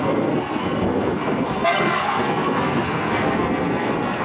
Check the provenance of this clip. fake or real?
fake